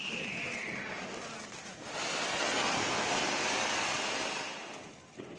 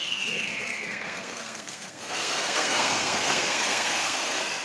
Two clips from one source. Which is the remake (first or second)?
second